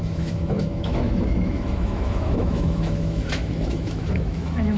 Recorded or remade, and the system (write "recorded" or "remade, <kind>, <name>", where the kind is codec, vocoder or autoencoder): remade, autoencoder, DAC-VAE